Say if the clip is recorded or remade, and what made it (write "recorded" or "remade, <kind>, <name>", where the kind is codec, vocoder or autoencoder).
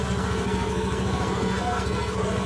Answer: remade, codec, SNAC